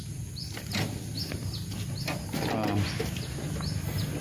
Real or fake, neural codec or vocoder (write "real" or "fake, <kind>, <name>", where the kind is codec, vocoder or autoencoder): real